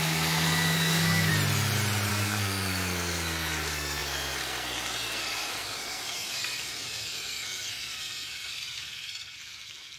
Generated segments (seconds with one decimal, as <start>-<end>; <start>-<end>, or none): 0.0-1.3; 2.1-10.0